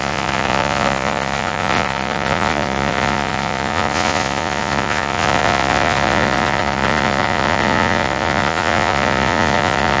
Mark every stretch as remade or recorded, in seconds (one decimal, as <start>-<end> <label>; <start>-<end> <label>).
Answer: 0.0-10.0 remade